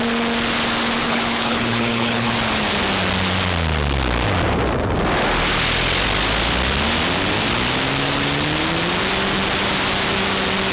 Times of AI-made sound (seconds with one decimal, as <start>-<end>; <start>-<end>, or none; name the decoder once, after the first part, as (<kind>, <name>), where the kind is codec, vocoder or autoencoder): 1.0-2.3 (codec, HILCodec)